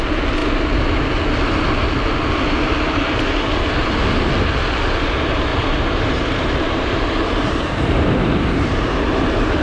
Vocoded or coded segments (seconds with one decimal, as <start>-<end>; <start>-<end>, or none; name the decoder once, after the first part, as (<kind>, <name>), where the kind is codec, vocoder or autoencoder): 5.5-9.6 (vocoder, BigVGAN v2)